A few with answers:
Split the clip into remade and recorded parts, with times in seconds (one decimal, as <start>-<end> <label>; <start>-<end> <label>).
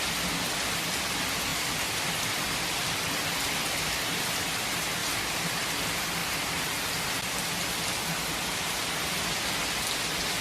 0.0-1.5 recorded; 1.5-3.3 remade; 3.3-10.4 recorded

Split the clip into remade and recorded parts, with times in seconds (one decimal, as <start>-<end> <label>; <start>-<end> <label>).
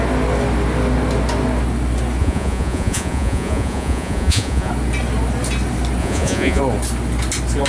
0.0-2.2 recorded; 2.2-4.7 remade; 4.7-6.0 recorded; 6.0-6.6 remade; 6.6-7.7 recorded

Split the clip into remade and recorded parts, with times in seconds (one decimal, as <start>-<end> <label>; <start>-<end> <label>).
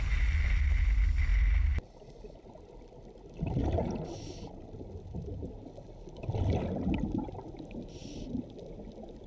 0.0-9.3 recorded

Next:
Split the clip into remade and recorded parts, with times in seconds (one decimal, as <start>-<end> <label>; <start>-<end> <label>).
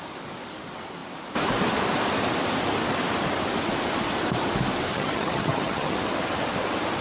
0.0-4.9 recorded; 4.9-6.0 remade; 6.0-7.0 recorded